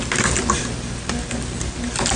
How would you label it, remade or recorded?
recorded